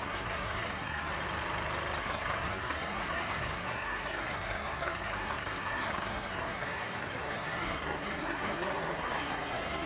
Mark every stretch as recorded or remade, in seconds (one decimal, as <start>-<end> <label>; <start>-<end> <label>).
0.0-1.1 remade; 1.1-2.0 recorded; 2.0-9.9 remade